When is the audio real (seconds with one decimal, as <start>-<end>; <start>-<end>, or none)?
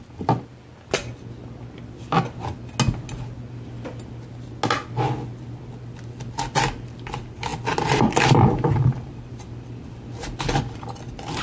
0.5-5.7